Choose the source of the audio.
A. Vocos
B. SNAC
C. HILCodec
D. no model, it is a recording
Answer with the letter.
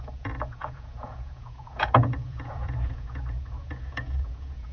A